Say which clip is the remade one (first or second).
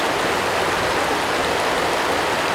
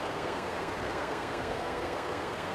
second